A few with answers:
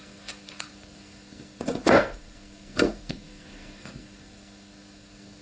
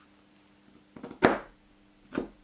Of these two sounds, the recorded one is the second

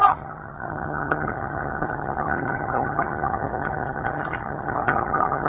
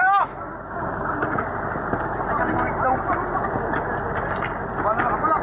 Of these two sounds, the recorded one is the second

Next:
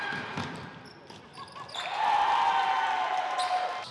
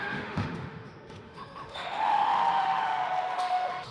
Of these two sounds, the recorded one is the first